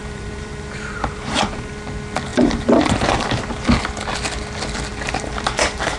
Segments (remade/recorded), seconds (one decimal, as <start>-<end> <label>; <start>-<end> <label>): 0.0-1.7 remade; 1.7-2.3 recorded; 2.3-3.4 remade; 3.4-4.9 recorded; 4.9-6.0 remade